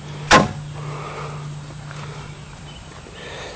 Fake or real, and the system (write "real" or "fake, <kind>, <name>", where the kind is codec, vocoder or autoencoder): real